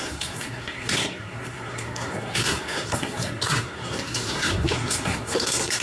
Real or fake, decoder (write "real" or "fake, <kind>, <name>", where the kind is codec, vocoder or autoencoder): fake, codec, SNAC